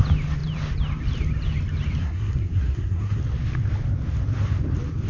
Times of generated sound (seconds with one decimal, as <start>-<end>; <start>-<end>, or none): 2.0-3.2